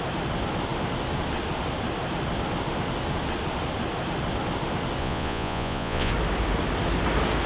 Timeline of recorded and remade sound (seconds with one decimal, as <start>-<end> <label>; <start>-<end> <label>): 0.0-5.0 recorded; 5.0-6.1 remade; 6.1-7.5 recorded